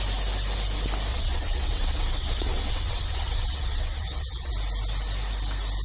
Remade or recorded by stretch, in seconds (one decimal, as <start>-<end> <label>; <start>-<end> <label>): 0.0-1.1 recorded; 1.1-4.5 remade; 4.5-5.8 recorded